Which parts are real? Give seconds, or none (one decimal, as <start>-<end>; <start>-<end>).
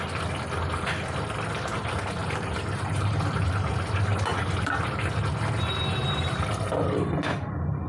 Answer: 0.0-2.2; 3.7-6.0; 6.5-7.9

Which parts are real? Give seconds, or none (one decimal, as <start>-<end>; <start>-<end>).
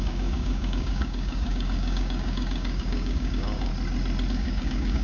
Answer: 3.7-4.3